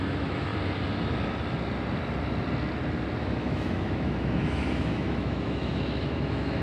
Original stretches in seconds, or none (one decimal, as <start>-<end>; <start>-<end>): 0.5-3.2